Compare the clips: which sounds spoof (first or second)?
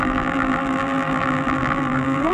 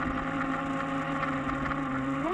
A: first